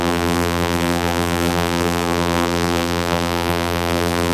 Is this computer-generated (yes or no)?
yes